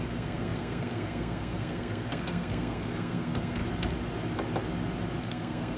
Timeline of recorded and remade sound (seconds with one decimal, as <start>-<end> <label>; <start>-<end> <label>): 0.0-3.6 remade; 3.6-5.2 recorded; 5.2-5.8 remade